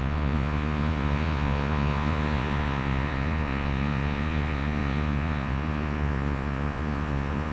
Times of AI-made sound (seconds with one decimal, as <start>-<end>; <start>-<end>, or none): 0.0-7.5